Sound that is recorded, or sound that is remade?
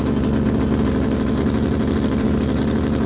recorded